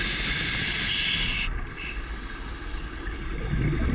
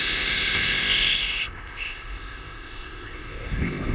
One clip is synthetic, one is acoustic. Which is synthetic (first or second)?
second